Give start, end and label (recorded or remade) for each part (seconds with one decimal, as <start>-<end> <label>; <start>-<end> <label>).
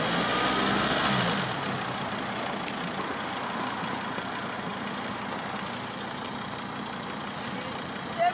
0.0-8.3 recorded